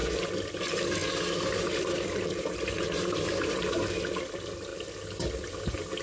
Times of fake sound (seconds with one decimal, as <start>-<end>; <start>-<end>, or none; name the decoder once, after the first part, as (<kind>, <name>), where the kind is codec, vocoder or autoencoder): 0.6-1.0 (vocoder, BigVGAN v2); 1.7-4.7; 5.4-6.0